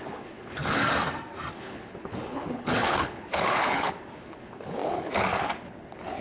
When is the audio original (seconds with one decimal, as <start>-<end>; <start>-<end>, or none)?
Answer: 0.8-1.5